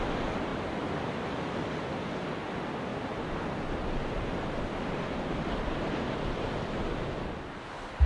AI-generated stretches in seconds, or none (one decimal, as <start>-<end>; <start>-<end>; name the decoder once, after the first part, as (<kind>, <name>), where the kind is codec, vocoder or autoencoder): 0.5-2.5 (vocoder, BigVGAN v2); 2.9-6.5